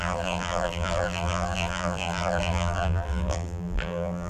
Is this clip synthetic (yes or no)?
yes